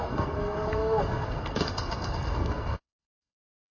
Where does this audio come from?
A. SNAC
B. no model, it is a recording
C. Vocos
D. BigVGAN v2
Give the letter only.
A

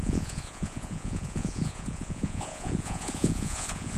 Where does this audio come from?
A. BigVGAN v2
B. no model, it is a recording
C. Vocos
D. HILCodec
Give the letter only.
C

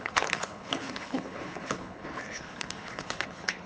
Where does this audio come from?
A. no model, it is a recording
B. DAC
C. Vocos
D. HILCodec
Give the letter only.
D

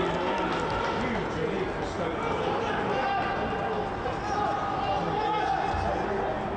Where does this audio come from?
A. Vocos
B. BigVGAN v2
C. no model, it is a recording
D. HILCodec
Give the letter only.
C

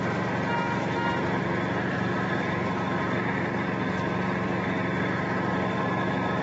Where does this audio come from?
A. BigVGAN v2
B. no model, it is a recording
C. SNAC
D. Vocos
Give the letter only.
A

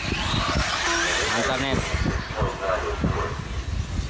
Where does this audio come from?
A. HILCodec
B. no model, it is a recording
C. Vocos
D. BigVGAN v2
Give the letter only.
B